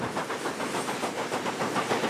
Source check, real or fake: fake